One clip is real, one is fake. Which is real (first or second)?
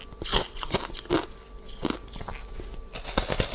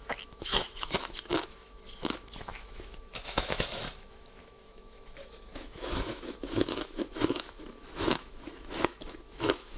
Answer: first